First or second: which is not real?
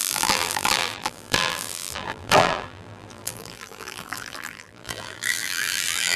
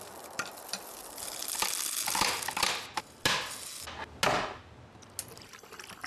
first